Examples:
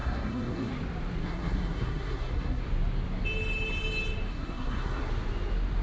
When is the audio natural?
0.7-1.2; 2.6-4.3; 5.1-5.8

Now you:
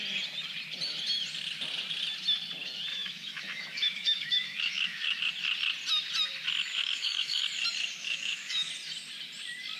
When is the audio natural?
0.0-2.9; 5.3-6.7; 7.4-8.0; 8.7-9.8

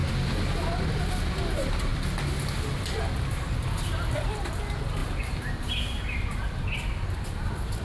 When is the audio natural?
0.0-7.8

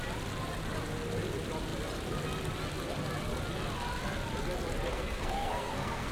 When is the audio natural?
0.0-4.9